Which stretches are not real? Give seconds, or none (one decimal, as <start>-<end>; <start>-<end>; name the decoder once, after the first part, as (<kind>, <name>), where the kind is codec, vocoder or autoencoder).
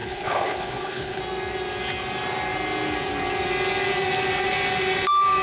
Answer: 0.0-1.2 (codec, HILCodec)